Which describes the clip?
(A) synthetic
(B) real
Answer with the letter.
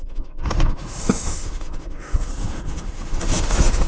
A